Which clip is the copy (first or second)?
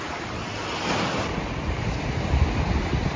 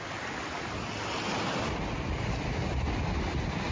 first